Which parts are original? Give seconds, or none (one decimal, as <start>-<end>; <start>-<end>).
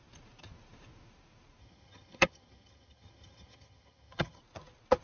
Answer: 0.0-1.6; 4.4-5.0